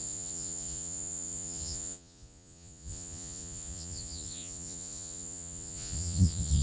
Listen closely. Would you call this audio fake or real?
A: fake